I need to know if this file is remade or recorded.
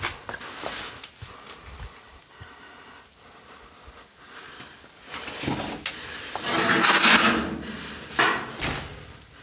recorded